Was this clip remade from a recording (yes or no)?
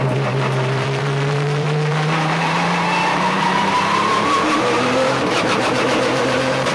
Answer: yes